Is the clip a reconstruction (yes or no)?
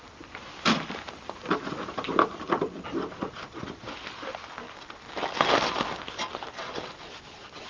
no